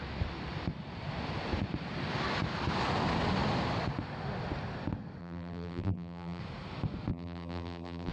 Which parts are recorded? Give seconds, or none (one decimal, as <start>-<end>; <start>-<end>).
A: 0.0-5.2; 6.4-7.1